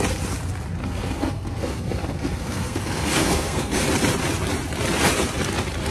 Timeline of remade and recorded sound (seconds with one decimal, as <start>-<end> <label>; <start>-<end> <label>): 0.0-0.8 recorded; 0.8-3.8 remade; 3.8-5.9 recorded